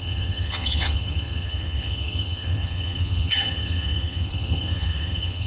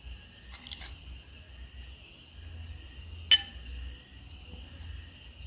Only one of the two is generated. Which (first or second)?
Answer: first